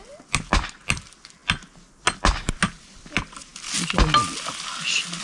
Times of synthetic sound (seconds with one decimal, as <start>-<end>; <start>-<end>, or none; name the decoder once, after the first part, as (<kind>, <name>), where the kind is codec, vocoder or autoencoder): none